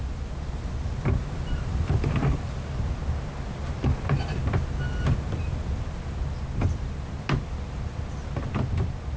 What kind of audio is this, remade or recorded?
recorded